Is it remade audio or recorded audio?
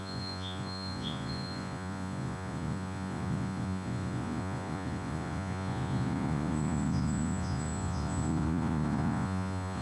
remade